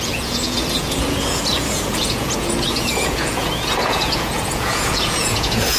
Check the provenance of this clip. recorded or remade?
remade